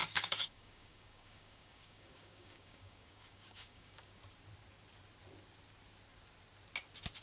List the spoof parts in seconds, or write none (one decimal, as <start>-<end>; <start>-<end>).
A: 0.0-4.2